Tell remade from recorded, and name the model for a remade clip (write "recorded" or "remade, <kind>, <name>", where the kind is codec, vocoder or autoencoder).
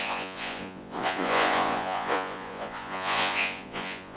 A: remade, vocoder, Vocos